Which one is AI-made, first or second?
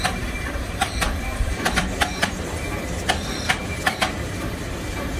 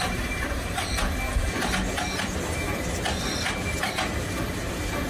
first